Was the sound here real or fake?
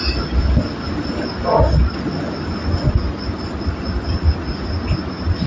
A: real